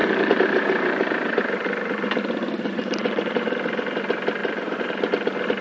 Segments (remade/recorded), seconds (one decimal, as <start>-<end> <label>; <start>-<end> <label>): 0.0-3.4 remade; 3.4-4.4 recorded; 4.4-5.1 remade; 5.1-5.6 recorded